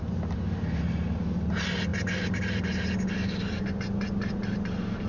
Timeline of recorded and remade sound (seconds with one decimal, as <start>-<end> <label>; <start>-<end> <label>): 0.0-5.1 recorded